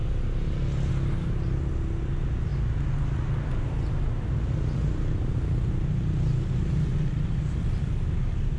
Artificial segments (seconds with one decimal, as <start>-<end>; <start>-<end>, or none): none